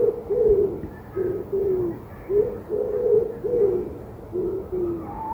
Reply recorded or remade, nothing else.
recorded